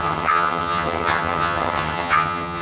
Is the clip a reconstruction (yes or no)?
yes